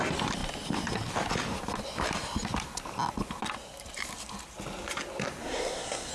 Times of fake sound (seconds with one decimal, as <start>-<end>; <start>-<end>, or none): 5.4-6.1